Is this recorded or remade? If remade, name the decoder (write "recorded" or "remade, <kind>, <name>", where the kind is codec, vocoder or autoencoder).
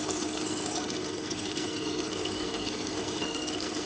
remade, codec, SNAC